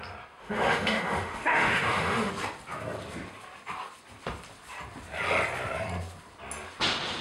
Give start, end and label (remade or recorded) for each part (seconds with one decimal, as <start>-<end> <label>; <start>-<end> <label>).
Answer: 0.0-0.4 recorded; 0.4-2.3 remade; 2.3-7.2 recorded